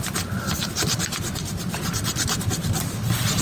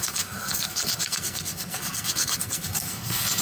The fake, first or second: second